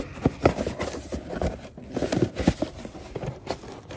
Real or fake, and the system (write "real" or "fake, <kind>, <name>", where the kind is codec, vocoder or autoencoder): real